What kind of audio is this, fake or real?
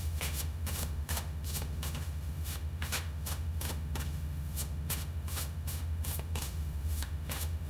fake